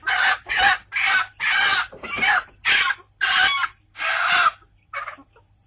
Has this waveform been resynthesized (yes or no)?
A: no